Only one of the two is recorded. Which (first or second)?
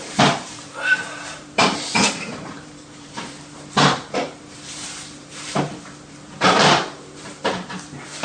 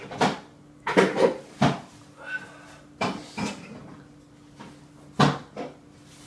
second